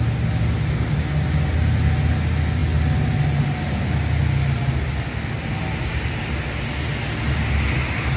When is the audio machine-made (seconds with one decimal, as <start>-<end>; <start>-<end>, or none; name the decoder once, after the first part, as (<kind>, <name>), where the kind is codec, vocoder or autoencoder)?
none